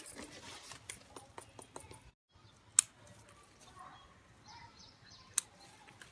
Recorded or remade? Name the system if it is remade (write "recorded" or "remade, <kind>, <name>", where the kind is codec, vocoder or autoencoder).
recorded